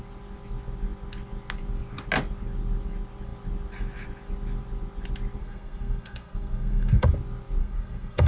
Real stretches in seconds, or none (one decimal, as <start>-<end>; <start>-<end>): 0.0-5.4; 7.1-7.6